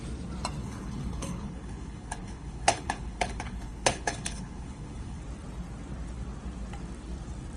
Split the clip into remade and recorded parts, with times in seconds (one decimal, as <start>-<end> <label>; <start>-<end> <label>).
0.0-0.6 recorded; 0.6-5.2 remade; 5.2-7.6 recorded